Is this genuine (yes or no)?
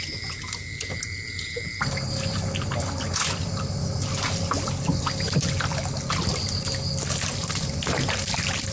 yes